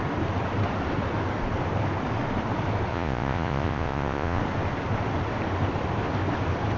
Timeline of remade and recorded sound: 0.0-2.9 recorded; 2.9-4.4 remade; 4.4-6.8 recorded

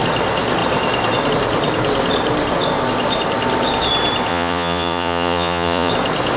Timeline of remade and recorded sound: 0.0-4.3 recorded; 4.3-5.9 remade; 5.9-6.4 recorded

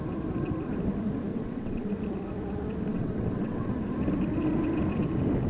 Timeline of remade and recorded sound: 0.0-1.3 recorded; 1.3-1.9 remade; 1.9-2.9 recorded; 2.9-3.7 remade; 3.7-5.5 recorded

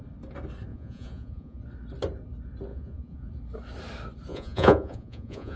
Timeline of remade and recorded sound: 0.0-0.7 recorded; 0.7-1.6 remade; 1.6-2.7 recorded; 2.7-3.3 remade; 3.3-4.3 recorded; 4.3-5.6 remade

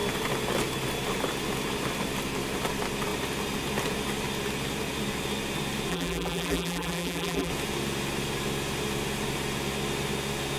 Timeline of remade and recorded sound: 0.0-5.9 recorded; 5.9-7.5 remade; 7.5-10.6 recorded

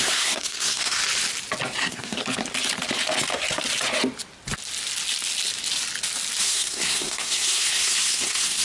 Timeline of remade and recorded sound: 0.0-1.0 remade; 1.0-1.8 recorded; 1.8-2.2 remade; 2.2-6.4 recorded; 6.4-8.6 remade

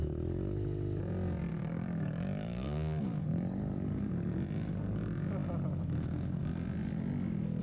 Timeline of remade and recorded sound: 0.0-1.5 recorded; 1.5-4.1 remade; 4.1-7.6 recorded

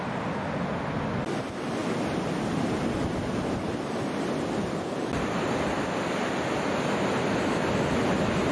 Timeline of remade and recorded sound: 0.0-8.5 recorded